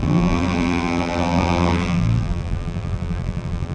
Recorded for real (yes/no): no